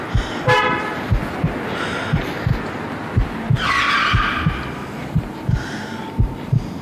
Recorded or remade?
recorded